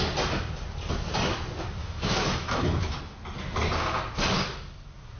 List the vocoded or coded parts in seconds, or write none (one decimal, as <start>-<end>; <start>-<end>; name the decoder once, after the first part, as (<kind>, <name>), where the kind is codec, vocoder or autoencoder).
1.8-3.0 (autoencoder, DAC-VAE)